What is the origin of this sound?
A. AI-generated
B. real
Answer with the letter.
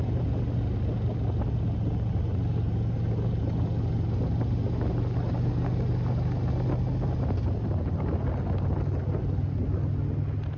B